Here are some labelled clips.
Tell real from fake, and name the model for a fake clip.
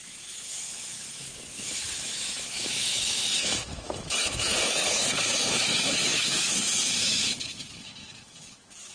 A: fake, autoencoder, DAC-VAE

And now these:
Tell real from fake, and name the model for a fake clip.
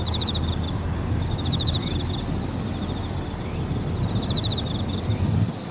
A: real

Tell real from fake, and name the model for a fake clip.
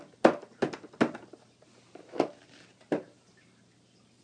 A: real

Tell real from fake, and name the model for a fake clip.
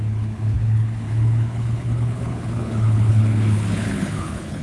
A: fake, codec, HILCodec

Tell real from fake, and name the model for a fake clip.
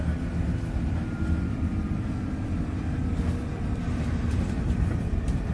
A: fake, vocoder, BigVGAN v2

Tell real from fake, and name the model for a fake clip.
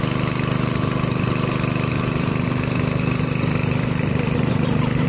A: real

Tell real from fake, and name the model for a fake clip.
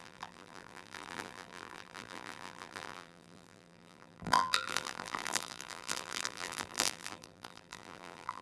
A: fake, vocoder, BigVGAN v2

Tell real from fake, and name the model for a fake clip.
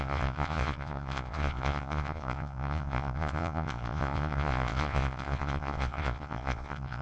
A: fake, vocoder, Vocos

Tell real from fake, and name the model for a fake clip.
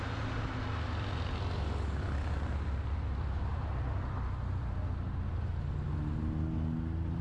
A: real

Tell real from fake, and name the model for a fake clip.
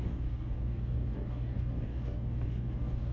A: fake, codec, DAC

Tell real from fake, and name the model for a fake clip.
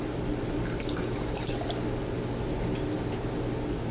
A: real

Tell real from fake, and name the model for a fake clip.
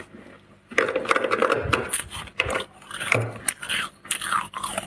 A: real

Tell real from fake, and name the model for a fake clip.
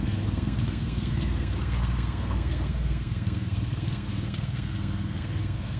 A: fake, codec, SNAC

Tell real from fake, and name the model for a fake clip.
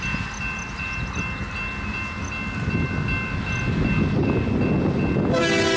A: real